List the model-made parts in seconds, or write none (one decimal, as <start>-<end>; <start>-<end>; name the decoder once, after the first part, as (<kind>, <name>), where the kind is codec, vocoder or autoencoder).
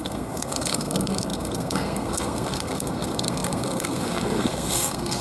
0.0-5.2 (codec, SNAC)